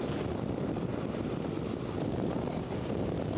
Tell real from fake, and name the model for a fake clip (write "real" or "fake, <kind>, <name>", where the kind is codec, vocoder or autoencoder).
real